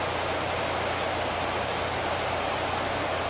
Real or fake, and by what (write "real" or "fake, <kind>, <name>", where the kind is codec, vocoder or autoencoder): real